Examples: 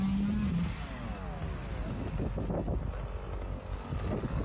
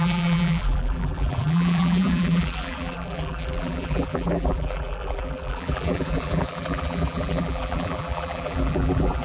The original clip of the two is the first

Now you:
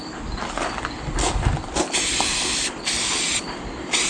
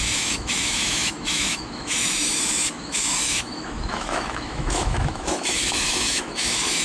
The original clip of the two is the first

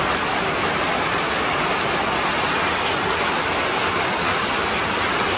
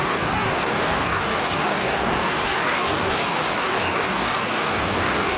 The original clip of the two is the first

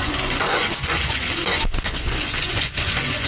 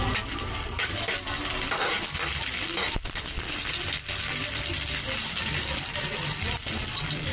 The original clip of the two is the second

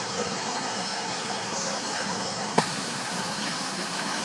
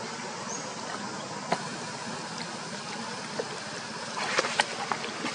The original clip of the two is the second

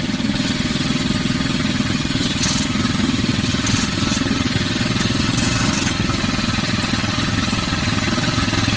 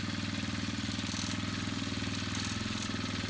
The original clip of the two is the second